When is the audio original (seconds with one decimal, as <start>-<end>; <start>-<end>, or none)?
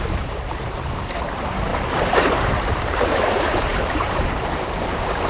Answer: 1.7-2.7